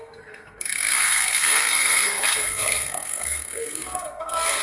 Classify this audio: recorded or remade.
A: remade